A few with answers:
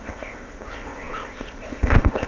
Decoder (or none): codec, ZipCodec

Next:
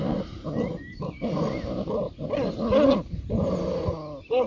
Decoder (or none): none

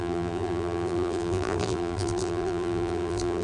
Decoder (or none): vocoder, BigVGAN v2